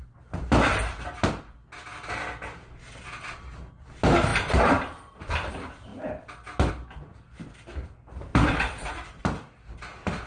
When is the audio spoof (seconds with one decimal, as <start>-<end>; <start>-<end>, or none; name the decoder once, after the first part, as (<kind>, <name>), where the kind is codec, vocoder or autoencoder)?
4.3-5.5 (vocoder, BigVGAN v2); 8.3-10.3